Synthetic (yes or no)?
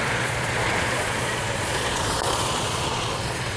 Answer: yes